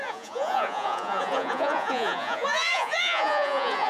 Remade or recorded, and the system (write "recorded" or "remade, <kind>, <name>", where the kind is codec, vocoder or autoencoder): remade, vocoder, Vocos